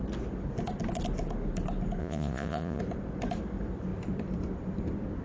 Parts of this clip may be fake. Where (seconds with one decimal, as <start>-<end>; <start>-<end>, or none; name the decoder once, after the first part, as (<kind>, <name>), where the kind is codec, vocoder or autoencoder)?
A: 2.0-2.8 (vocoder, Vocos)